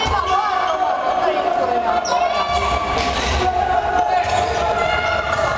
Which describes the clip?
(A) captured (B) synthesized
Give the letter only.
A